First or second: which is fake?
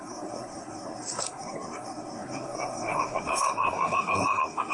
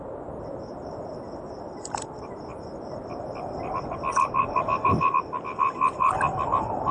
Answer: first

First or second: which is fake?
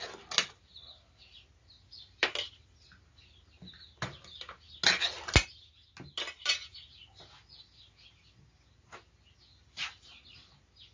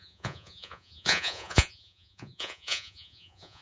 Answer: second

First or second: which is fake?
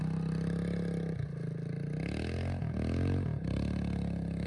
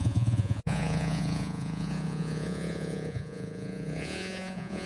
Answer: second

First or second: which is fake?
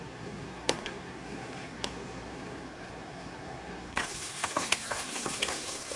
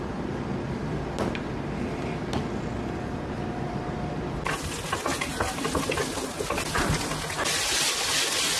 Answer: first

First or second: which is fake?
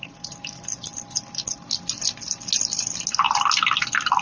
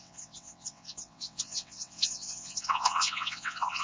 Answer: second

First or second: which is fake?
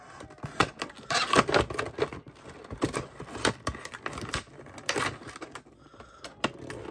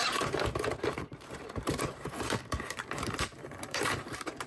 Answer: second